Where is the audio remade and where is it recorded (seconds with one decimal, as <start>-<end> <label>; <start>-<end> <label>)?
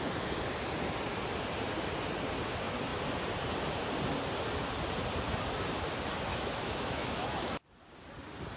0.0-6.3 recorded; 6.3-7.5 remade; 7.5-8.6 recorded